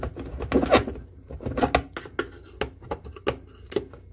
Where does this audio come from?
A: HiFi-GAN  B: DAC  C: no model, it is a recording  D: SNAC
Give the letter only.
C